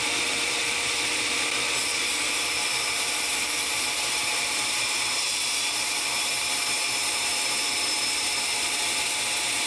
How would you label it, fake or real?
fake